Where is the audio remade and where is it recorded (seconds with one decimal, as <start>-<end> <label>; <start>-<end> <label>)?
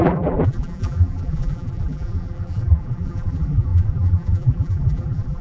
0.0-5.4 remade